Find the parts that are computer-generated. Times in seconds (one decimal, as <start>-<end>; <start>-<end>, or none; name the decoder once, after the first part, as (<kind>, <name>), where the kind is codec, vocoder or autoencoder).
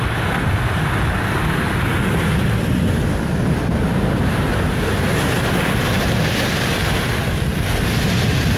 none